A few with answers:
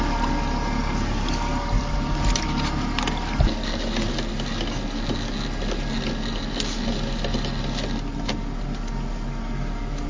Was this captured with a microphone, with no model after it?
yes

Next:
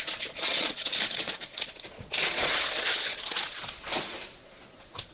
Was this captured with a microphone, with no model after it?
no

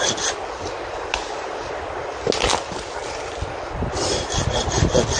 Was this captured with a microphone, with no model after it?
yes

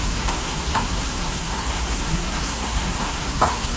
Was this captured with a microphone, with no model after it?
no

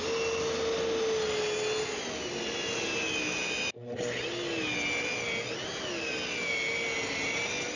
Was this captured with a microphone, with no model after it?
yes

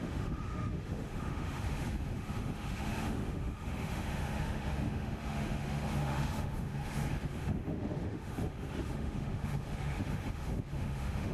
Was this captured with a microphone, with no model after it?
no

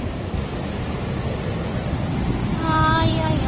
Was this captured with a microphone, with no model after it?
yes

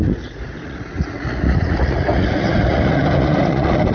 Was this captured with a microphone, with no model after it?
no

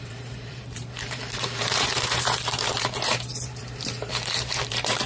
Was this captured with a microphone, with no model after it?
no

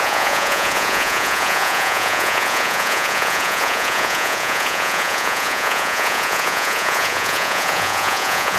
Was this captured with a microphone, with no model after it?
no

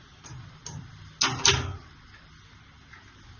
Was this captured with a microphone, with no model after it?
yes